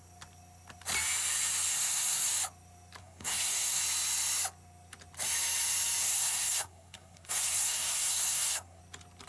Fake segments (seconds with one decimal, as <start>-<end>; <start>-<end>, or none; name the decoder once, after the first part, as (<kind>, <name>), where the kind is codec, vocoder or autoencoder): 1.7-2.3 (codec, SNAC); 3.0-3.8; 6.0-8.8

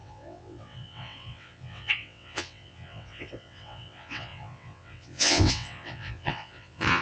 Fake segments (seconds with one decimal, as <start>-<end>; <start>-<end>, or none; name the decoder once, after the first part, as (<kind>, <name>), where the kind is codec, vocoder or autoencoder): 0.0-7.0 (vocoder, WaveNeXt)